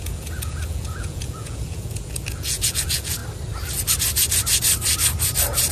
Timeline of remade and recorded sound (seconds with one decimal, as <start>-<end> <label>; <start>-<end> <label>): 0.0-3.2 remade; 3.2-5.7 recorded